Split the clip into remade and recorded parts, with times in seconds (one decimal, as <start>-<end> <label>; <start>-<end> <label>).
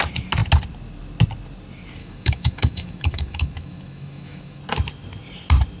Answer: 0.0-2.0 recorded; 2.0-4.6 remade; 4.6-5.8 recorded